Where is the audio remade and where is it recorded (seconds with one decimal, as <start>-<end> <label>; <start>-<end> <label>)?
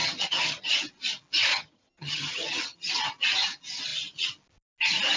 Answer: 0.0-0.7 remade; 0.7-1.5 recorded; 1.5-2.9 remade; 2.9-5.2 recorded